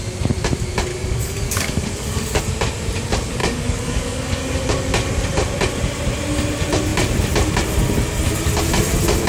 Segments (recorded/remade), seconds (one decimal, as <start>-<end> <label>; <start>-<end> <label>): 0.0-0.9 recorded; 0.9-2.4 remade; 2.4-3.4 recorded; 3.4-4.5 remade; 4.5-9.3 recorded